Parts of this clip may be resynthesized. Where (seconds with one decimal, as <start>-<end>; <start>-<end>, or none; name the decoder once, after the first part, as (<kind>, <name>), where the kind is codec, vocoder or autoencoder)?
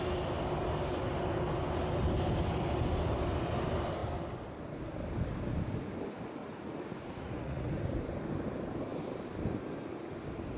6.4-7.7 (vocoder, Vocos)